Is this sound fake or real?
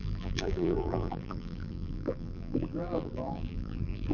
fake